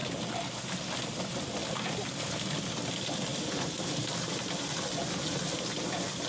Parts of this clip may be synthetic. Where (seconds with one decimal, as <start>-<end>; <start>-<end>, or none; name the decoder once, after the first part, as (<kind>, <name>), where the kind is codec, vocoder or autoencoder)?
1.6-2.6 (vocoder, BigVGAN v2); 3.3-4.0